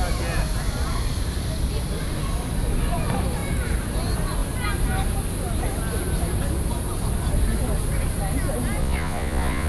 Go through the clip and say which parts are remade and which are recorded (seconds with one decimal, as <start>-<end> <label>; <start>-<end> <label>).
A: 0.0-8.8 recorded; 8.8-9.7 remade